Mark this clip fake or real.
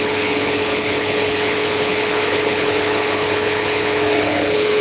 fake